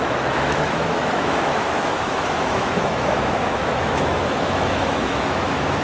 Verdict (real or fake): fake